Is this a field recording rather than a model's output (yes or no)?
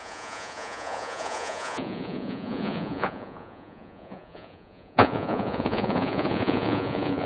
no